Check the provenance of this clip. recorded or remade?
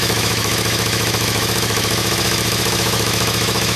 remade